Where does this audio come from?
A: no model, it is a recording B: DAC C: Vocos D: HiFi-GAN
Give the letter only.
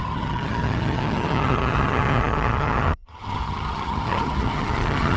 D